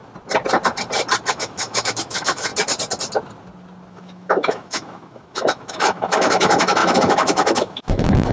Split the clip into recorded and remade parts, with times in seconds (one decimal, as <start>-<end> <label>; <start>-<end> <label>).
0.0-1.3 recorded; 1.3-2.5 remade; 2.5-3.9 recorded; 3.9-8.3 remade